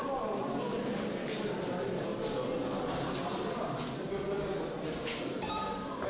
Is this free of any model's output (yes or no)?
yes